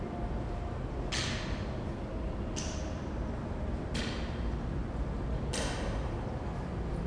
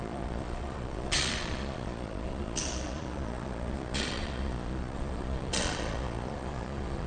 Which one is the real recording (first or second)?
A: first